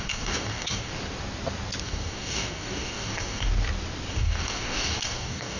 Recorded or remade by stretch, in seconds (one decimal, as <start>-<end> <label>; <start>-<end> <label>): 0.0-0.9 remade; 0.9-1.8 recorded; 1.8-3.5 remade; 3.5-4.1 recorded; 4.1-5.6 remade